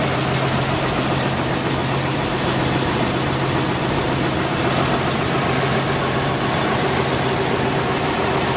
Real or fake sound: real